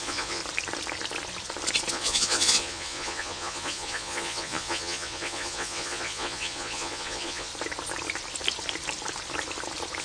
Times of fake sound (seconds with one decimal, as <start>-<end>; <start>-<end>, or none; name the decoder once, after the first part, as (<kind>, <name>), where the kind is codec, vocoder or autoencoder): 0.0-0.4 (vocoder, Vocos); 1.9-7.5